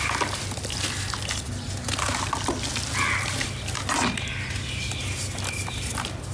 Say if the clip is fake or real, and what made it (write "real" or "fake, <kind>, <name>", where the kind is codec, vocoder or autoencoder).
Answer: real